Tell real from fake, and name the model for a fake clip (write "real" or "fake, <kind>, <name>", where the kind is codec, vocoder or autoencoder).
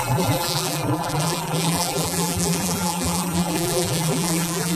fake, vocoder, BigVGAN v2